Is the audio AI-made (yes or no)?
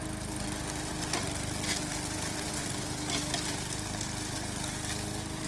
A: no